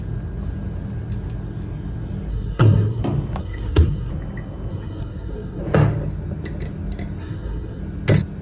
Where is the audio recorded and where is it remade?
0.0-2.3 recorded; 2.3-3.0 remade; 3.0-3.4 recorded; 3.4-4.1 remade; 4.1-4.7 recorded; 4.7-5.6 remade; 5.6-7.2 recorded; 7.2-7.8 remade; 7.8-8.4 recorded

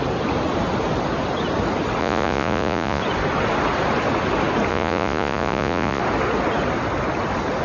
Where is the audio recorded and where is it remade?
0.0-2.0 recorded; 2.0-3.0 remade; 3.0-4.7 recorded; 4.7-6.0 remade; 6.0-7.6 recorded

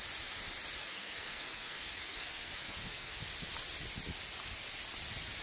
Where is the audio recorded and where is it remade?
0.0-0.8 recorded; 0.8-3.2 remade; 3.2-5.4 recorded

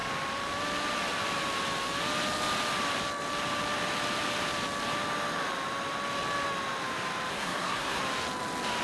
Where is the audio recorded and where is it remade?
0.0-7.3 recorded; 7.3-8.0 remade; 8.0-8.8 recorded

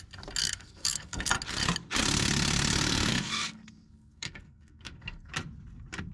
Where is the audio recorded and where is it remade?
0.0-0.4 recorded; 0.4-1.3 remade; 1.3-3.1 recorded; 3.1-5.3 remade; 5.3-6.1 recorded

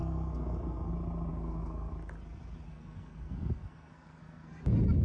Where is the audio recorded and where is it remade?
0.0-0.9 remade; 0.9-1.3 recorded; 1.3-1.9 remade; 1.9-2.7 recorded; 2.7-4.6 remade; 4.6-5.0 recorded

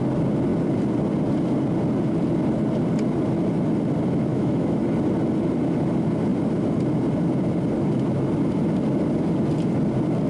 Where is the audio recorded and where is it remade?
0.0-4.3 recorded; 4.3-4.8 remade; 4.8-10.3 recorded